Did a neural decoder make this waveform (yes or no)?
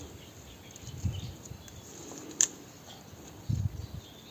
no